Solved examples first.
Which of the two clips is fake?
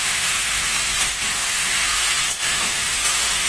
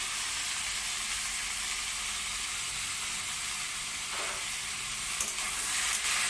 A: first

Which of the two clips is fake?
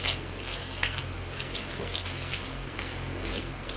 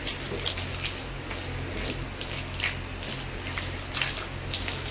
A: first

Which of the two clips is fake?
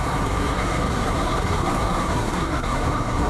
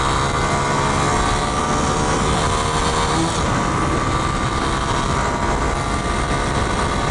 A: first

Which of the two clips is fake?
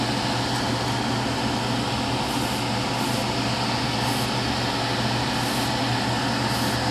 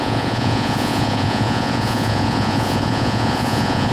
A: second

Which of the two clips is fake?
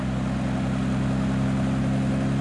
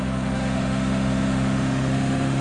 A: second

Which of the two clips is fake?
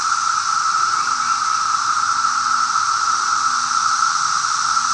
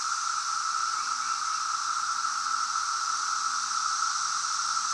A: first